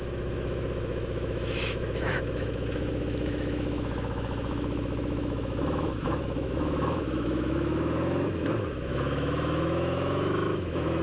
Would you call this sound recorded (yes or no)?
no